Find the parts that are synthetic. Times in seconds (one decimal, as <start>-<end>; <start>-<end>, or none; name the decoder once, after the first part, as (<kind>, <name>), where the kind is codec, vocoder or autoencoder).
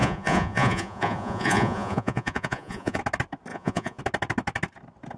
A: 0.0-3.0 (vocoder, Vocos); 3.5-4.0